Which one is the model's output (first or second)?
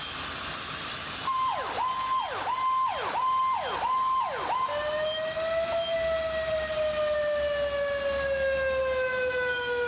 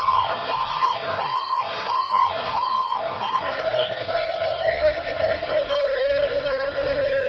second